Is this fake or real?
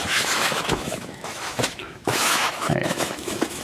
fake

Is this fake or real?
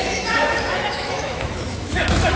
fake